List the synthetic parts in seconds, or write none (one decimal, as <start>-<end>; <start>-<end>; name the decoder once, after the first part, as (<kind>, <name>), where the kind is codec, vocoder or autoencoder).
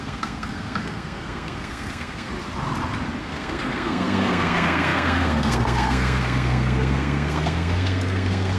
0.0-2.3 (codec, SNAC); 3.2-8.6